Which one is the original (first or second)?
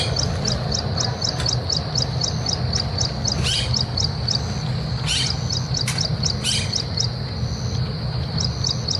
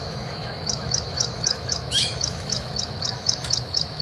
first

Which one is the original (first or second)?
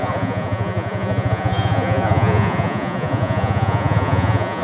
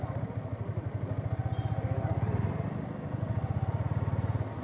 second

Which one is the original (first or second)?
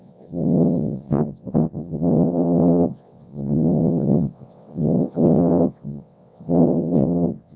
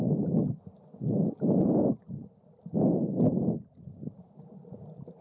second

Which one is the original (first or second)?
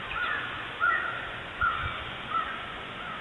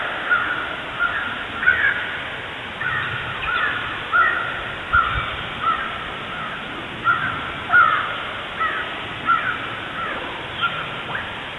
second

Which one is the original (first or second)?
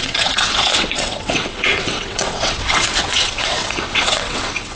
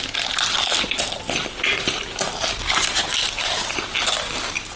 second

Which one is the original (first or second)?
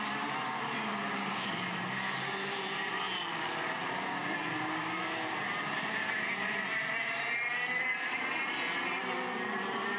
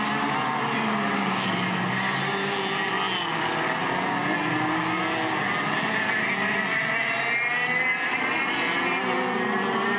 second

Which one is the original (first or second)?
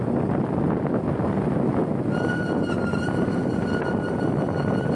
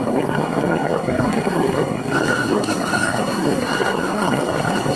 first